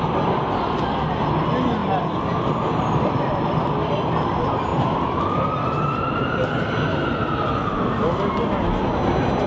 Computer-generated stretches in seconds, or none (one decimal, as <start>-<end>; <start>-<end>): none